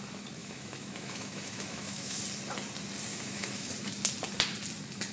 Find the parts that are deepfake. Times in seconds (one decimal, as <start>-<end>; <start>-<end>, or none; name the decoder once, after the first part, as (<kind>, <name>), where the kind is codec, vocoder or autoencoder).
0.4-2.2 (autoencoder, DAC-VAE); 3.1-3.7